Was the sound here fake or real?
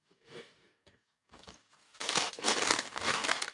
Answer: fake